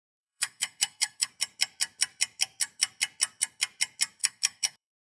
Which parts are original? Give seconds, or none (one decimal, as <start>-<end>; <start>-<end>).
1.3-4.2